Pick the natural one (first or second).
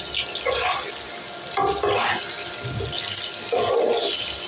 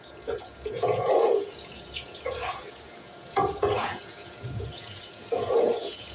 first